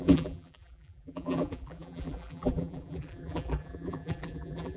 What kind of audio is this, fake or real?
fake